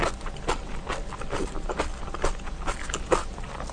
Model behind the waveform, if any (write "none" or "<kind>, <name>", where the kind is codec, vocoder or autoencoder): none